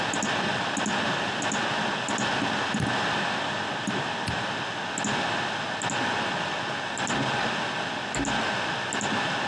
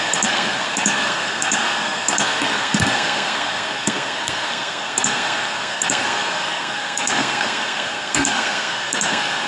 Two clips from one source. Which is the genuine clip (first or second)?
first